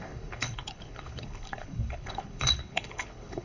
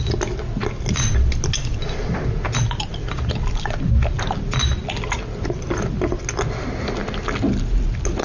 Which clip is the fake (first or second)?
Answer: first